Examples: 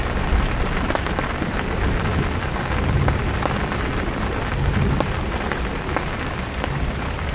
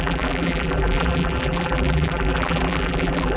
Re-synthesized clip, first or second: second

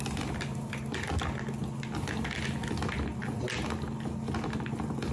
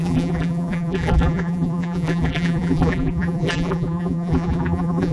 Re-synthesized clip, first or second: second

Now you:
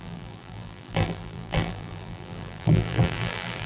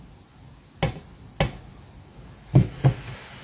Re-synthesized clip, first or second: first